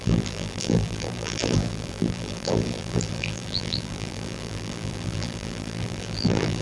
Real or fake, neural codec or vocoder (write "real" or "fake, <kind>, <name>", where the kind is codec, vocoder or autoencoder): fake, vocoder, BigVGAN v2